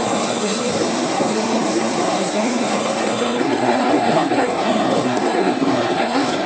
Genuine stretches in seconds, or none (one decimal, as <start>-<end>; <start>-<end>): none